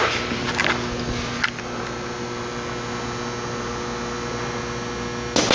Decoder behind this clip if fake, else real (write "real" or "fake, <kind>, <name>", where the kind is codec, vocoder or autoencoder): real